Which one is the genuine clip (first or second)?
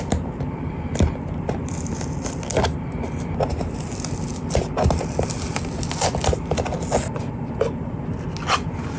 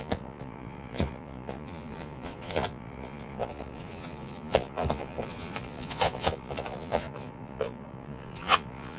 first